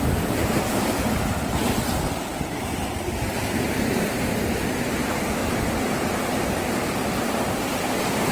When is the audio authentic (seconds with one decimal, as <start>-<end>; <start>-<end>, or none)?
0.0-2.3; 4.8-8.3